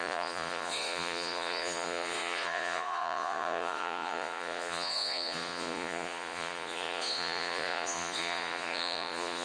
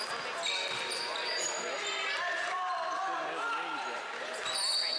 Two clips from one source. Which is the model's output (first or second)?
first